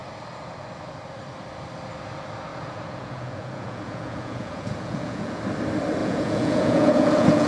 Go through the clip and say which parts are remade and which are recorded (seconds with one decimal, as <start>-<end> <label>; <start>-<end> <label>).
0.0-2.5 recorded; 2.5-5.4 remade; 5.4-6.0 recorded; 6.0-7.5 remade